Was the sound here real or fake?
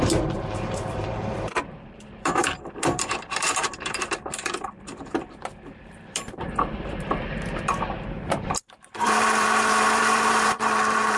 fake